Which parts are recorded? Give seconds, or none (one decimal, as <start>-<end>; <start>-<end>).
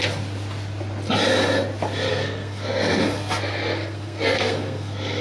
0.0-2.1